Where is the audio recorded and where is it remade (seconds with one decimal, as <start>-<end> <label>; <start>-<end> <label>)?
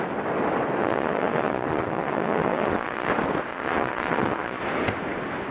0.0-0.8 recorded; 0.8-3.1 remade; 3.1-3.5 recorded; 3.5-4.6 remade; 4.6-5.5 recorded